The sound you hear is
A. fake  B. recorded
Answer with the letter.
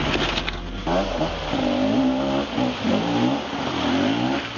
B